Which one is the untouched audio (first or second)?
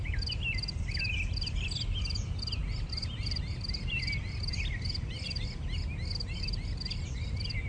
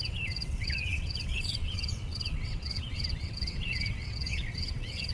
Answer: first